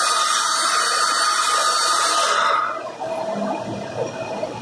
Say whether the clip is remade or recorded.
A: recorded